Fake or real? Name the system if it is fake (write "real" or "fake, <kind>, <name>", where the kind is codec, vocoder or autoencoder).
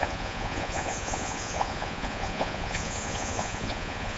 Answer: fake, vocoder, Vocos